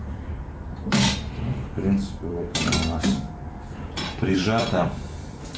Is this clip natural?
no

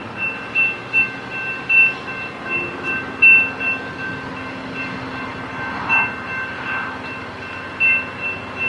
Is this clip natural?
yes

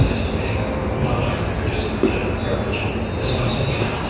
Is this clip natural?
yes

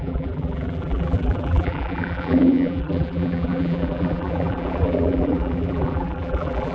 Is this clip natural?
no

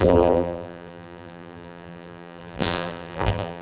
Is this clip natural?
no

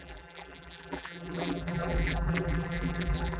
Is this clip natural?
no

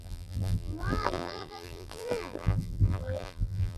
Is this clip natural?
no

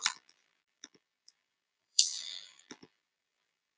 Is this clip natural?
no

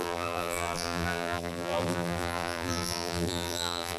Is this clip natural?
no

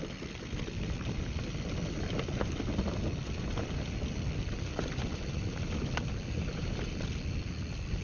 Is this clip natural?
no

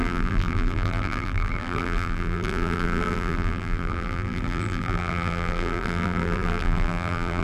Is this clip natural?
no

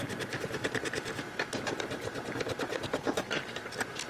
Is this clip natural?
no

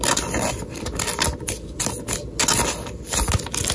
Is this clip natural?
yes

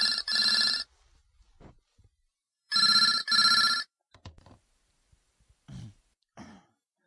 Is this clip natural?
no